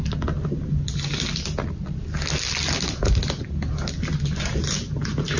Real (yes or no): yes